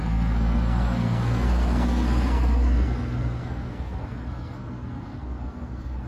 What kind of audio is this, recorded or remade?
remade